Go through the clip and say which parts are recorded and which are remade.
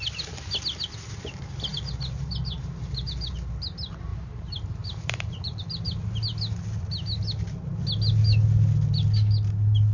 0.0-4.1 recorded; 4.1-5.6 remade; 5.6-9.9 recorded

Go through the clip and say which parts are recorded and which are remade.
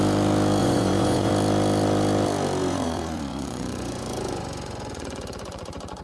0.0-0.6 recorded; 0.6-1.3 remade; 1.3-2.6 recorded; 2.6-6.0 remade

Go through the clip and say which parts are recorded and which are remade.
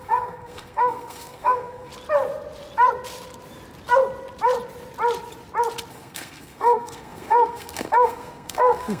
0.0-1.9 remade; 1.9-5.9 recorded; 5.9-9.0 remade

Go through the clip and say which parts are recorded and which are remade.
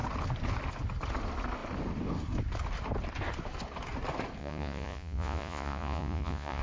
0.0-4.4 recorded; 4.4-6.6 remade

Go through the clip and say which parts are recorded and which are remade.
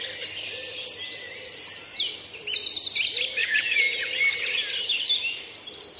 0.0-3.4 recorded; 3.4-4.0 remade; 4.0-6.0 recorded